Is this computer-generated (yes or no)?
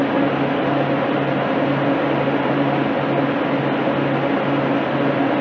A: no